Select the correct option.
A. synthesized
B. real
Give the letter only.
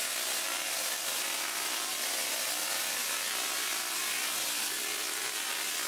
B